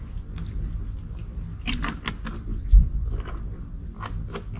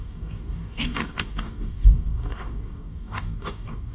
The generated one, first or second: second